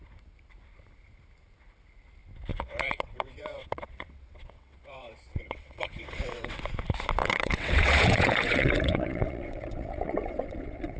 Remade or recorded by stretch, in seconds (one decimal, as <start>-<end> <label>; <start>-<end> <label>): 0.0-2.5 recorded; 2.5-6.6 remade; 6.6-7.2 recorded; 7.2-11.0 remade